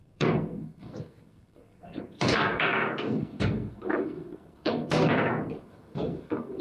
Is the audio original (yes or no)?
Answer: no